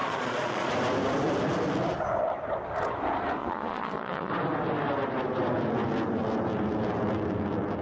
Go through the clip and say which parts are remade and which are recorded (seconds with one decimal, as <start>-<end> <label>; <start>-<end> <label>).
0.0-0.7 remade; 0.7-3.4 recorded; 3.4-4.3 remade; 4.3-7.8 recorded